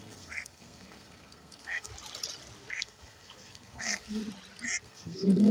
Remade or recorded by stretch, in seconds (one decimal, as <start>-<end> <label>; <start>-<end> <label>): 0.0-1.9 remade; 1.9-2.7 recorded; 2.7-4.2 remade; 4.2-4.8 recorded; 4.8-5.5 remade